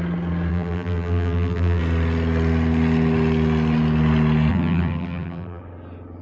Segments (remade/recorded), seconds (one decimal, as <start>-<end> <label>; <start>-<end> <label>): 0.0-0.5 recorded; 0.5-1.8 remade; 1.8-4.5 recorded; 4.5-5.6 remade; 5.6-6.2 recorded